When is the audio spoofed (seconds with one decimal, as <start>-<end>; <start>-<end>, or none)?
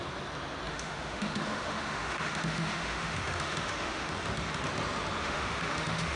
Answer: 0.7-4.1; 5.2-6.2